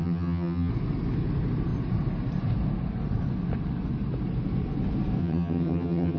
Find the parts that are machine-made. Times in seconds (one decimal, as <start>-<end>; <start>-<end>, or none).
0.0-0.7; 5.2-6.2